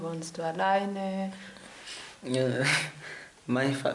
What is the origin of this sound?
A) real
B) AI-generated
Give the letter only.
A